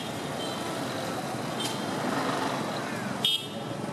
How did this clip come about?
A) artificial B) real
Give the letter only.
B